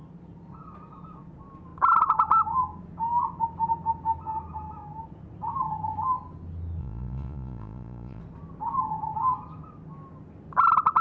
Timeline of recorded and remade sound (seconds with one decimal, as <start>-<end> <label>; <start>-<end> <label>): 0.0-6.8 recorded; 6.8-8.2 remade; 8.2-11.0 recorded